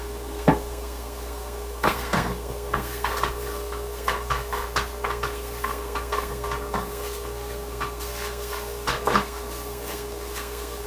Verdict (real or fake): fake